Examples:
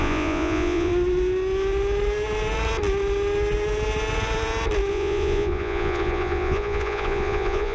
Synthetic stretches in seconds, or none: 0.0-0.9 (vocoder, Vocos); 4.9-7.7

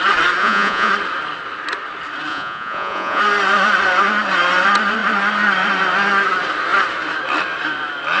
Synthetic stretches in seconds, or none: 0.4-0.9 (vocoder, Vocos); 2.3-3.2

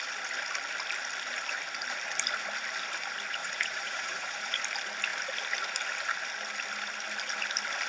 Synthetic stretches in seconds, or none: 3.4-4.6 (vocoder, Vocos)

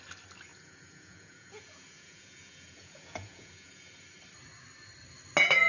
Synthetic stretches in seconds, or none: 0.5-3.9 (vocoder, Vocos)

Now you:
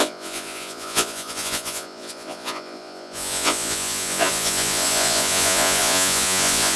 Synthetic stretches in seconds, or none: 0.0-6.8 (vocoder, Vocos)